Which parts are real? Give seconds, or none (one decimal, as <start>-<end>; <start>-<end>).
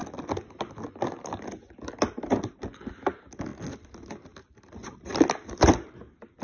0.0-6.4